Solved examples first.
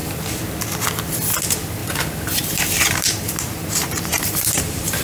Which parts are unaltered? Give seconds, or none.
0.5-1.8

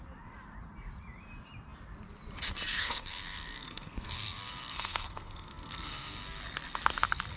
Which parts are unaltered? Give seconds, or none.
0.0-2.7; 6.4-7.4

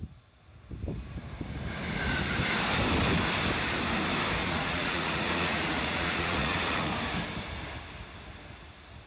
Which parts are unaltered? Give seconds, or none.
0.0-4.4; 6.9-9.1